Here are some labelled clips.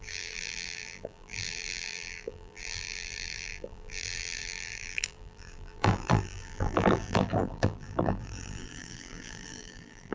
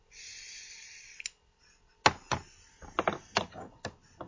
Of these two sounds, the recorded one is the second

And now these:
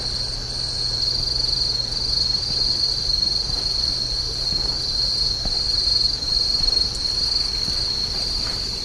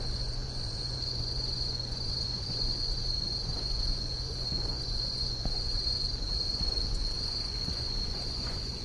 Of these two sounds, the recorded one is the first